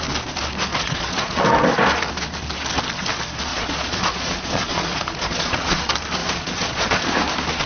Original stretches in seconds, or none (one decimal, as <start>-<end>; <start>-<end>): 0.0-0.7; 1.4-3.5; 5.8-6.2; 7.1-7.7